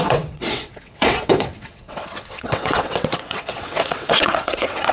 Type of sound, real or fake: fake